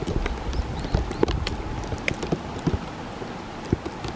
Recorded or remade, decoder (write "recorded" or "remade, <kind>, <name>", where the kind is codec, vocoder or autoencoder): recorded